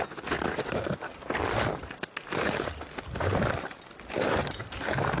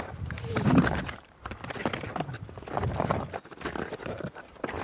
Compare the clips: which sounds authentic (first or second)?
first